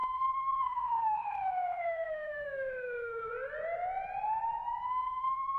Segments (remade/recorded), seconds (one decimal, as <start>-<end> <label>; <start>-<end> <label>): 0.0-3.3 remade; 3.3-4.9 recorded; 4.9-5.6 remade